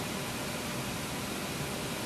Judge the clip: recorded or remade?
recorded